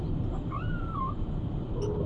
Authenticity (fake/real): real